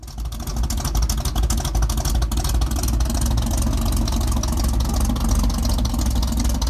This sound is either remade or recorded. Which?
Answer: recorded